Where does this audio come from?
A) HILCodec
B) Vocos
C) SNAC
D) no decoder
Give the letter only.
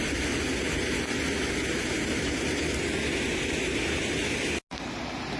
D